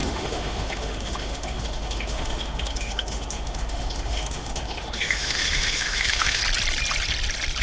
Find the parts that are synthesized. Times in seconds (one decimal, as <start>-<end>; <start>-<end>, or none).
0.0-6.4